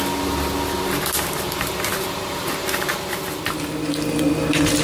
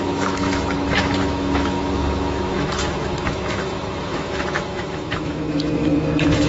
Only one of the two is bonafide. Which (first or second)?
first